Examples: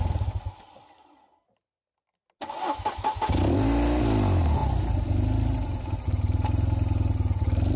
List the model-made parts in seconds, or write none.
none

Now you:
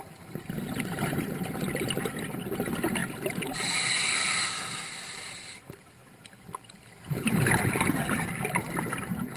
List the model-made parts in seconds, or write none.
none

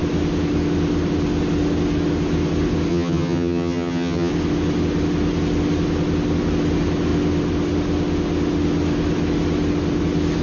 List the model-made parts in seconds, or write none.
2.9-4.3 (vocoder, HiFi-GAN)

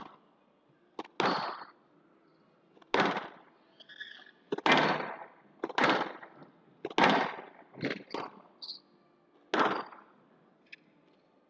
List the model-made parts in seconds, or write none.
none

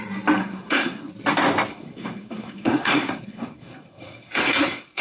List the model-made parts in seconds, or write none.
0.4-1.1 (codec, SNAC); 1.7-5.0

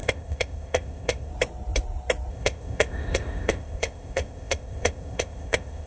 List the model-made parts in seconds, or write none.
0.0-1.3 (codec, ZipCodec); 2.3-5.9

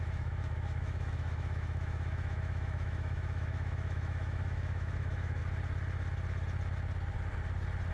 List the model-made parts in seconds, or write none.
0.0-5.4 (autoencoder, DAC-VAE)